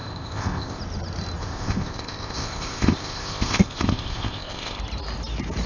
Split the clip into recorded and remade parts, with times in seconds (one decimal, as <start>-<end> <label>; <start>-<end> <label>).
0.0-0.8 remade; 0.8-1.4 recorded; 1.4-4.8 remade; 4.8-5.7 recorded